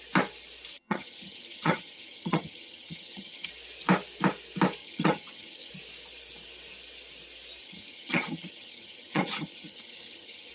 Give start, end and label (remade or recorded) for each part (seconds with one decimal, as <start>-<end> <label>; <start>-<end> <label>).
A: 0.0-0.7 recorded; 0.7-3.5 remade; 3.5-4.8 recorded; 4.8-5.7 remade; 5.7-7.6 recorded; 7.6-10.5 remade